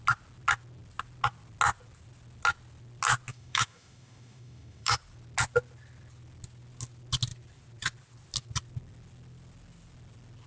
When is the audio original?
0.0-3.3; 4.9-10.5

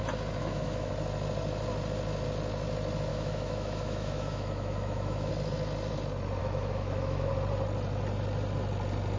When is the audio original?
0.0-0.4; 0.9-3.1; 5.3-6.4; 7.3-9.2

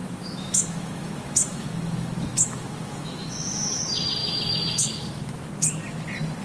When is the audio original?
3.8-4.2; 5.2-6.4

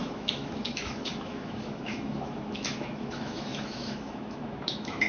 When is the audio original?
none